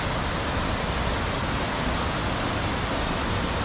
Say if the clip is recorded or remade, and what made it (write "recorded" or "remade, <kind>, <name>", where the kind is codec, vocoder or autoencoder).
recorded